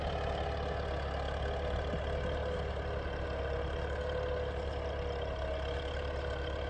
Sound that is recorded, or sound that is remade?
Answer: recorded